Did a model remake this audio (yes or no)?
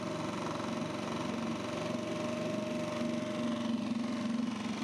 no